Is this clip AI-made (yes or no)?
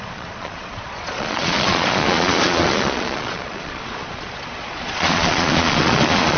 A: yes